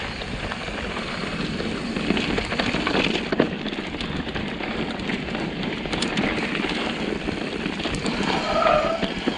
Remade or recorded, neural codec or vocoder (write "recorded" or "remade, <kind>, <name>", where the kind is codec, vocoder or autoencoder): remade, vocoder, BigVGAN v2